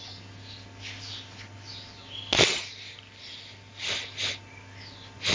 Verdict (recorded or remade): recorded